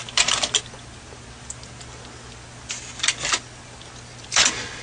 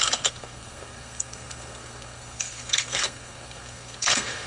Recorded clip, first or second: first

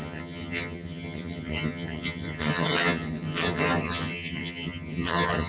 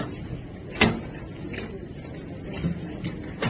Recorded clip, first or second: second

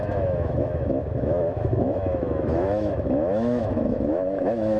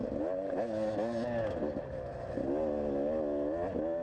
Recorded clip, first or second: second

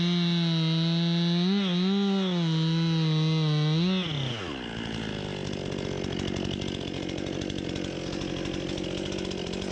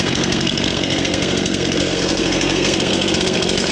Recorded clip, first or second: first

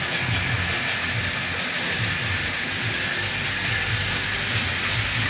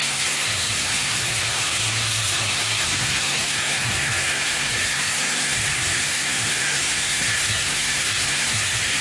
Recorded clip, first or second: first